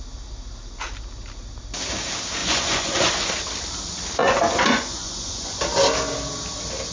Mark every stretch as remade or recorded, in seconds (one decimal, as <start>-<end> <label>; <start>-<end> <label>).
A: 0.0-2.4 recorded; 2.4-3.1 remade; 3.1-4.2 recorded; 4.2-5.6 remade; 5.6-6.9 recorded